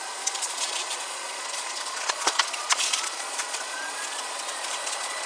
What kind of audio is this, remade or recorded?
remade